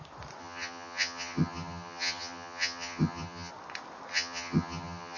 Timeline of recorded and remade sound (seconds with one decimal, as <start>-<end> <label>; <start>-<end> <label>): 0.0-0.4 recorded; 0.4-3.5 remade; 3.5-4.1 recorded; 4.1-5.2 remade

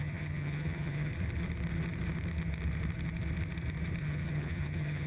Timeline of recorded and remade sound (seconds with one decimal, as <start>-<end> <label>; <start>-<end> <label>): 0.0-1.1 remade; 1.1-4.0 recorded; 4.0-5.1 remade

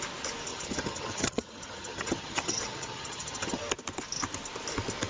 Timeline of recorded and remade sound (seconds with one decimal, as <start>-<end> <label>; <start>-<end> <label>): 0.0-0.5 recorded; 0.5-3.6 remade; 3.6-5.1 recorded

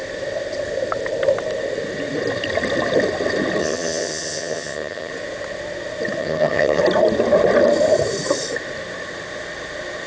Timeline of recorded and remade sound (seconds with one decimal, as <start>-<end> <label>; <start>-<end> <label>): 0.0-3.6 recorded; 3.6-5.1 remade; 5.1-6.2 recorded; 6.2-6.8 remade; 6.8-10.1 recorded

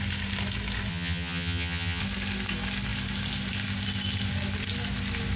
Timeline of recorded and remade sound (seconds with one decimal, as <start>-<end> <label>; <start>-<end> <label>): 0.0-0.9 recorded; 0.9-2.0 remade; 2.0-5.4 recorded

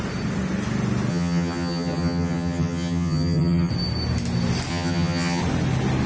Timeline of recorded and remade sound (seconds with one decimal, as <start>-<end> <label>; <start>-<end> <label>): 0.0-1.1 recorded; 1.1-3.7 remade; 3.7-4.7 recorded; 4.7-5.4 remade; 5.4-6.1 recorded

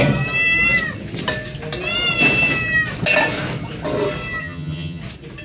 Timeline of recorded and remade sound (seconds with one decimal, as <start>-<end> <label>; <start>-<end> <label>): 0.0-4.4 recorded; 4.4-5.0 remade; 5.0-5.4 recorded